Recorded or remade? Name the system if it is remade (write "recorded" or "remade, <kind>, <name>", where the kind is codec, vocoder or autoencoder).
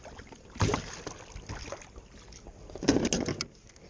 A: recorded